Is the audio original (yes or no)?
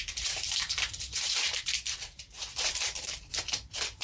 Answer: no